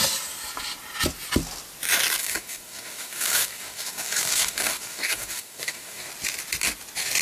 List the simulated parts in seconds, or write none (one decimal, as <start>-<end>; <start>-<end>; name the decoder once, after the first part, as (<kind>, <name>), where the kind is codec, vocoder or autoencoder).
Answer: 2.2-6.1 (codec, DAC)